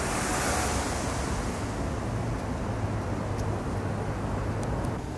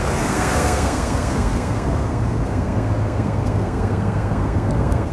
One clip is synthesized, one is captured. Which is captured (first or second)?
first